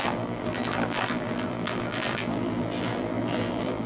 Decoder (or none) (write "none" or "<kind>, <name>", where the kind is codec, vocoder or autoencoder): vocoder, BigVGAN v2